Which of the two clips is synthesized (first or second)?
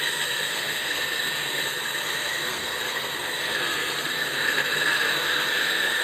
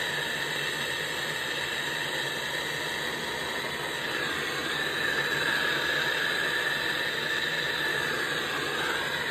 first